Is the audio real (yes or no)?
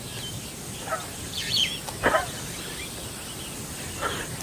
yes